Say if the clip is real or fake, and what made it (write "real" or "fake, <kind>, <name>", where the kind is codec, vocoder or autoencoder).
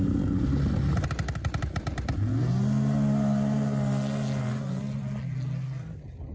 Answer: real